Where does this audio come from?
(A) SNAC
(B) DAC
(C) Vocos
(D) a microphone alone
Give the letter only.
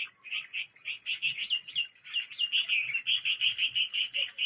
D